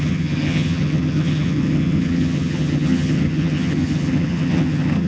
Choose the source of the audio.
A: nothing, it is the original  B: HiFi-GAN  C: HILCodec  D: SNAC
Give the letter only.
B